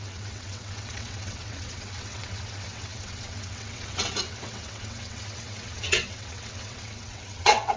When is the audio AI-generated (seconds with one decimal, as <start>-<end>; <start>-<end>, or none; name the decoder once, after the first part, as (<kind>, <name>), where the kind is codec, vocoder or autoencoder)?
0.0-7.8 (vocoder, WaveNeXt)